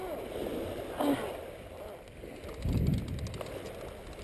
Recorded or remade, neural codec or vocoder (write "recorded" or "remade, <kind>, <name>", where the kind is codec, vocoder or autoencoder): recorded